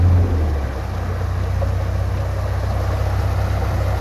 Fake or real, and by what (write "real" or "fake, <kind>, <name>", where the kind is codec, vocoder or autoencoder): real